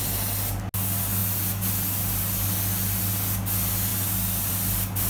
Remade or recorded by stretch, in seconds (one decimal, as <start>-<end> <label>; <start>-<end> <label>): 0.0-5.1 recorded